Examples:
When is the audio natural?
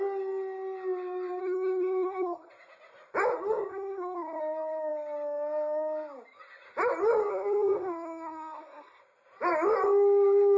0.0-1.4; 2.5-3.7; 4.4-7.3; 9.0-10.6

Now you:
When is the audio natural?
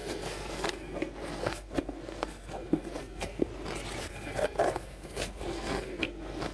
3.5-4.0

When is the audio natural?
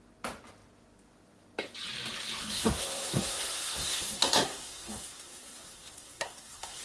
0.0-2.4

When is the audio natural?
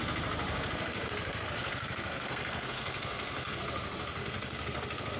0.0-0.5; 3.6-4.2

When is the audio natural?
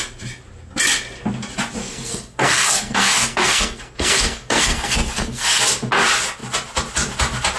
0.0-1.8; 5.6-7.6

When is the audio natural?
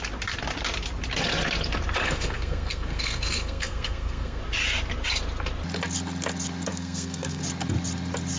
0.0-2.0; 4.4-6.7; 7.4-8.4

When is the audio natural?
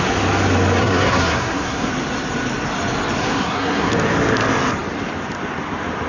0.0-0.8; 1.9-3.2; 3.9-6.1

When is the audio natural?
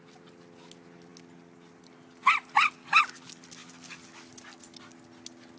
0.0-5.6